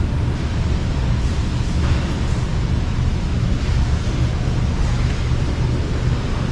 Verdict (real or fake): real